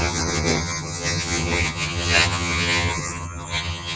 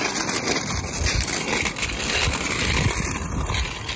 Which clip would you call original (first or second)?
second